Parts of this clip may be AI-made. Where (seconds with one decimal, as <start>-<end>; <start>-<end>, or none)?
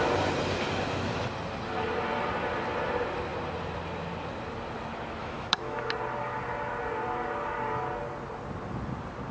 5.2-5.9